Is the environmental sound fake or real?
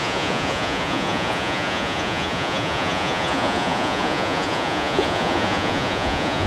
fake